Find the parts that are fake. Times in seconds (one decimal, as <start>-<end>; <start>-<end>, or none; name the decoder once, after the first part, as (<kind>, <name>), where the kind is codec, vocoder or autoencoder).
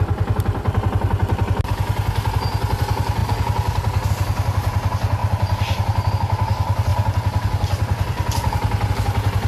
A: 5.2-6.1 (vocoder, BigVGAN v2)